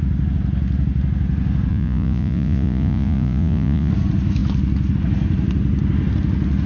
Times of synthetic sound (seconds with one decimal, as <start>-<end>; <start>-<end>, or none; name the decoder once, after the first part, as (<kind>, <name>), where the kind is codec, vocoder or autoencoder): 1.7-3.9 (vocoder, Vocos)